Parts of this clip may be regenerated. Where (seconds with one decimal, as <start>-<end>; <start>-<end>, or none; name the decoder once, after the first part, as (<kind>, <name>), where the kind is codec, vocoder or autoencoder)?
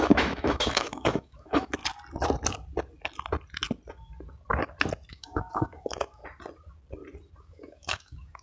0.0-1.8 (autoencoder, DAC-VAE); 5.1-6.2; 7.4-8.4